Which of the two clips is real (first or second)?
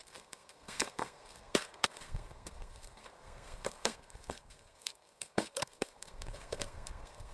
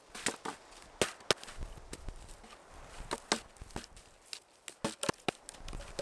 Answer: second